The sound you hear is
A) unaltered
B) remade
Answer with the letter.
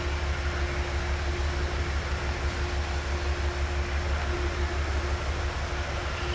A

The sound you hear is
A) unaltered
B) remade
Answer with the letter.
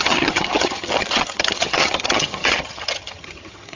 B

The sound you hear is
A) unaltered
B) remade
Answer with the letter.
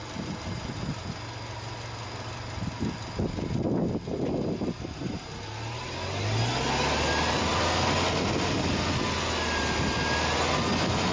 A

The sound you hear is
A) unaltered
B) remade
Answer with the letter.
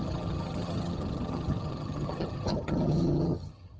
B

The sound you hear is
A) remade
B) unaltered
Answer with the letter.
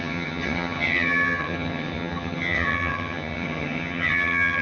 A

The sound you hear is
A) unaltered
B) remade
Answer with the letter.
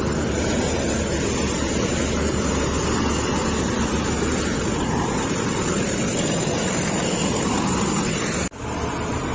A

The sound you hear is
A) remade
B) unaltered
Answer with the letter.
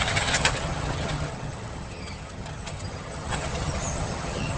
A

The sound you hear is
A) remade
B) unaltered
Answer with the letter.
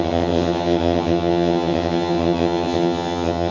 A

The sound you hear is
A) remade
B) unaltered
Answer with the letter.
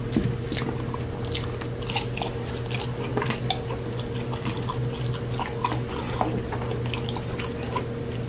B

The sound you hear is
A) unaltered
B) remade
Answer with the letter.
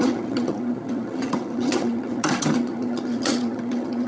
B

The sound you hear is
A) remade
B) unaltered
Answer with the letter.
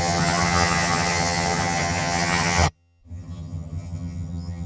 A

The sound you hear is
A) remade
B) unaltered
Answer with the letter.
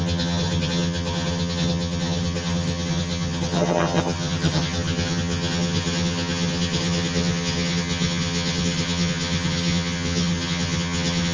A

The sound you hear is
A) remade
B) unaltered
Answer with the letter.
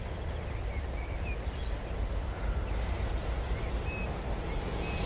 B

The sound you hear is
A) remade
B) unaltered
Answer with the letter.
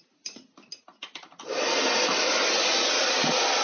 B